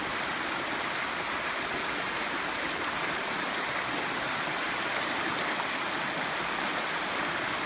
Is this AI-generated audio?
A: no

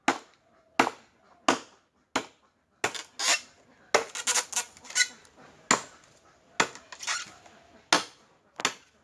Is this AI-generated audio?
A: no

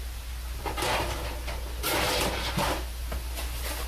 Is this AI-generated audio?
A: no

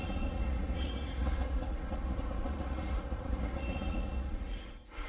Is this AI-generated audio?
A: yes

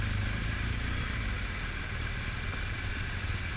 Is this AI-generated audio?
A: no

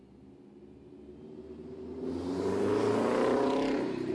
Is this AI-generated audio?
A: no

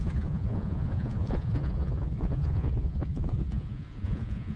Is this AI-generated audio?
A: yes